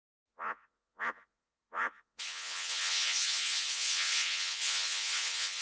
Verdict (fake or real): fake